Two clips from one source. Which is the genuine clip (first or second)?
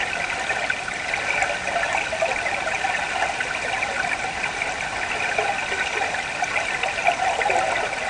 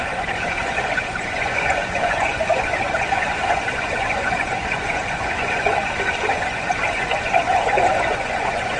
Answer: first